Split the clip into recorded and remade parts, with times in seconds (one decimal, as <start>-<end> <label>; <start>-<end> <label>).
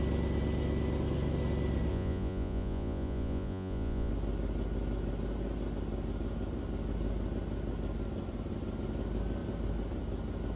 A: 0.0-1.9 recorded; 1.9-4.1 remade; 4.1-10.6 recorded